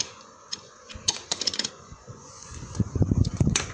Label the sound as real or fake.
fake